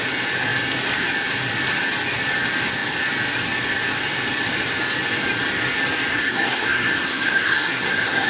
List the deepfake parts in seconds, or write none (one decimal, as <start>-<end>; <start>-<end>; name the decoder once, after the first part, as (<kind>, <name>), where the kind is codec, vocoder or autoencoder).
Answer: 6.1-8.3 (codec, SNAC)